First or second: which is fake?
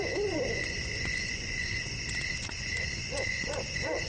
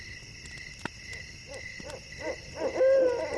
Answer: first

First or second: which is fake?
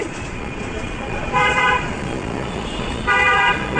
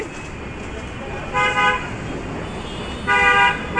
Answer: first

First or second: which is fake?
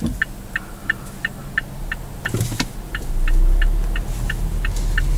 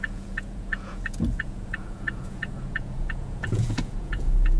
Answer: second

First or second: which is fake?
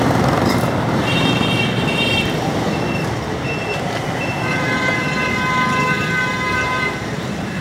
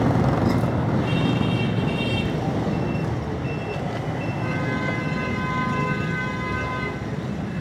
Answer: first